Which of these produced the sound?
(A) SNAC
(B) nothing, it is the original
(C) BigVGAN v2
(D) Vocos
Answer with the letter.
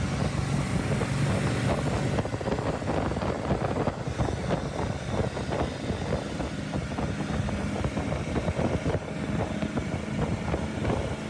B